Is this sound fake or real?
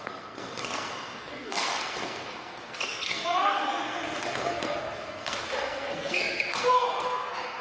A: fake